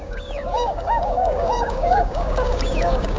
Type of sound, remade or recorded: remade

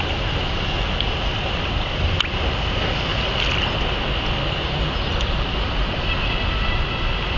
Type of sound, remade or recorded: recorded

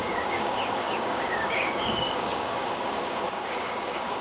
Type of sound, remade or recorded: remade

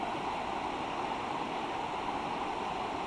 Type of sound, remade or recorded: recorded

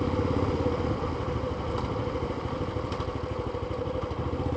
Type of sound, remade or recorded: recorded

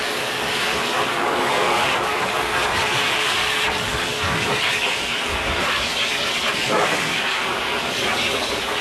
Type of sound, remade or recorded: remade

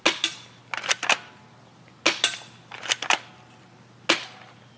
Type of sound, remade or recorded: recorded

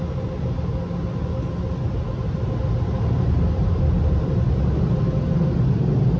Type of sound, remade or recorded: recorded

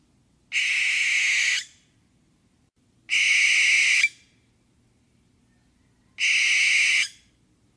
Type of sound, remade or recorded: recorded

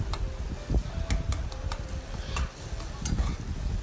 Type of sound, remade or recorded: recorded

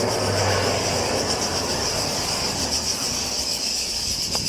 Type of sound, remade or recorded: remade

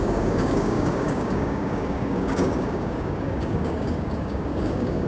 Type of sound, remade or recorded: remade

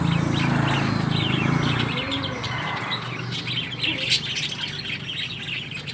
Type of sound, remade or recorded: recorded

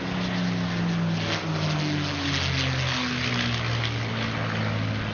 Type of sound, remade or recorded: recorded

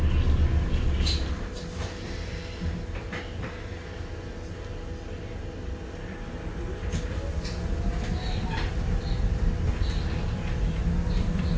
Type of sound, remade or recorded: recorded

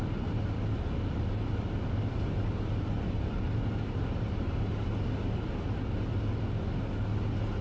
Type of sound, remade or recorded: recorded